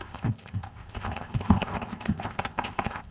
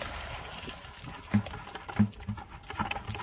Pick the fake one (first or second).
first